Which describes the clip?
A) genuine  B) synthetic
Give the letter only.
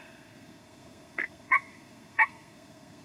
B